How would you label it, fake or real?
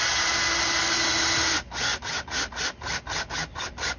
real